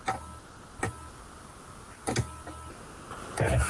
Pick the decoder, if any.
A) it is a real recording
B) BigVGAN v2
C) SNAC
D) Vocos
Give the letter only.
A